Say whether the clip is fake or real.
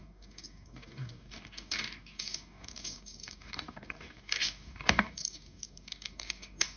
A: fake